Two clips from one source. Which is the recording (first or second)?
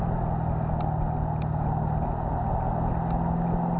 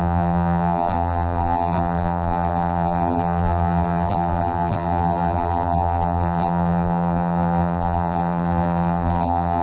first